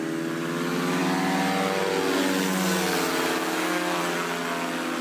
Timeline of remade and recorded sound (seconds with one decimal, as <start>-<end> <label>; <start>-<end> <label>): 0.0-5.0 recorded